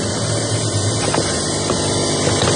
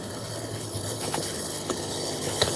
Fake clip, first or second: second